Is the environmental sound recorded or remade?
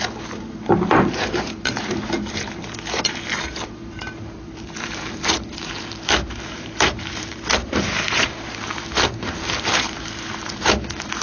remade